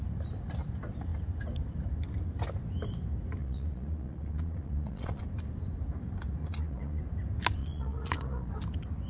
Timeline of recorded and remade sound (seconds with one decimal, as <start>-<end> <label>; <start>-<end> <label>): 0.0-3.4 recorded; 3.4-5.2 remade; 5.2-6.4 recorded; 6.4-7.0 remade; 7.0-7.6 recorded; 7.6-8.5 remade; 8.5-9.1 recorded